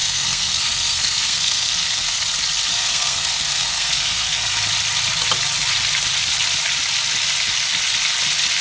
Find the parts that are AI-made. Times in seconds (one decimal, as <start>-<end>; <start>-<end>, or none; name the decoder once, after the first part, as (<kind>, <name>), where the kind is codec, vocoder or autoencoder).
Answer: 0.0-2.2 (codec, SNAC); 2.7-4.6